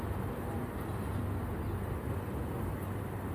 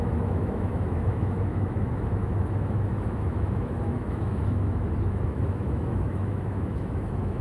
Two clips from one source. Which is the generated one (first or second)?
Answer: second